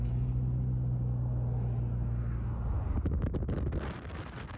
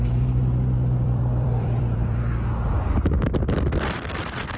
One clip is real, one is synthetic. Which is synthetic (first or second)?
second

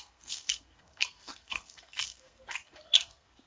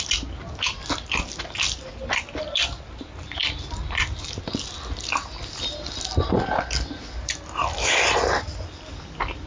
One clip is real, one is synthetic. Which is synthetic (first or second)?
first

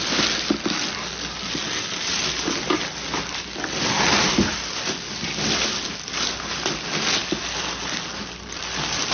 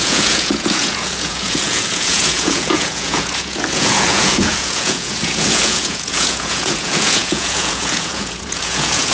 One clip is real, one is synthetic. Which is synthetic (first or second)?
second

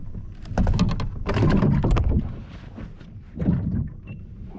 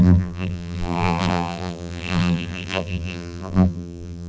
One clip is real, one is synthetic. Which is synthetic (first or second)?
second